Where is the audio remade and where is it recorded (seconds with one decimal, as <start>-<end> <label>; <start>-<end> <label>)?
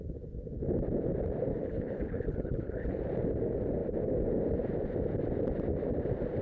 0.0-1.5 recorded; 1.5-3.0 remade; 3.0-6.4 recorded